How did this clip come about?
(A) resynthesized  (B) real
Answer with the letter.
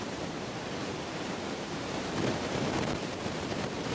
A